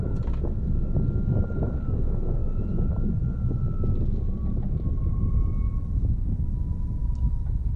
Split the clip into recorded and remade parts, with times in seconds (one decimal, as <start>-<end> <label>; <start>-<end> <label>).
0.0-7.8 recorded